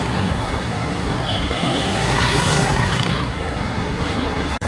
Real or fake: fake